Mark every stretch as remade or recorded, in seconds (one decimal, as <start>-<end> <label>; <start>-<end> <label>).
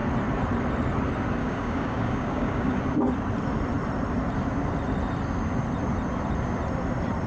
0.0-1.4 recorded; 1.4-2.8 remade; 2.8-7.3 recorded